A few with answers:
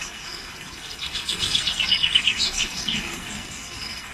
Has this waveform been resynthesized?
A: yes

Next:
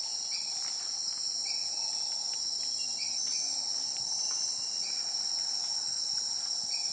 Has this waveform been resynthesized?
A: no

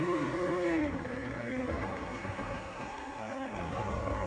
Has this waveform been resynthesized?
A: yes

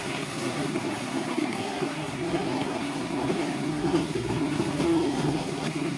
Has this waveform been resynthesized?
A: yes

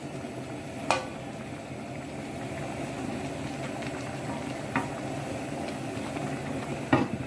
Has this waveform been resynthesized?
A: no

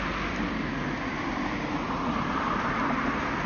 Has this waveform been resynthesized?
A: no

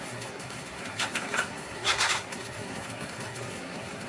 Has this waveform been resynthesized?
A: yes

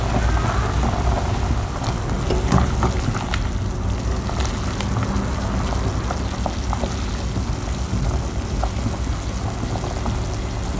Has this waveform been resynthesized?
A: no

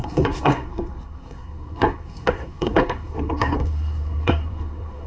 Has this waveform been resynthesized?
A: yes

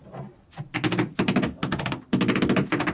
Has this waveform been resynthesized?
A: no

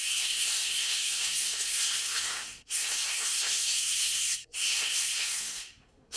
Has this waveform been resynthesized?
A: yes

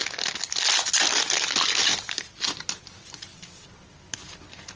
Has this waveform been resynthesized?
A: no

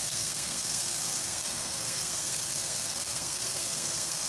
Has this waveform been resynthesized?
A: yes